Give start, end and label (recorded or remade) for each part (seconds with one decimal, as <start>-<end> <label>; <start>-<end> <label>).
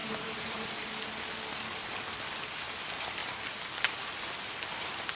0.0-1.0 remade; 1.0-5.2 recorded